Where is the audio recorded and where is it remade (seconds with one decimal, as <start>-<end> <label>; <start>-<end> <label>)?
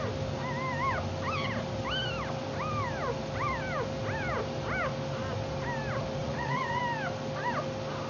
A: 0.0-6.2 recorded; 6.2-6.8 remade; 6.8-8.1 recorded